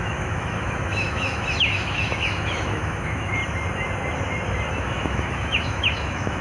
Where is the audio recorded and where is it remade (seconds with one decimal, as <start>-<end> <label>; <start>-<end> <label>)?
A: 0.0-3.4 remade; 3.4-4.7 recorded; 4.7-6.4 remade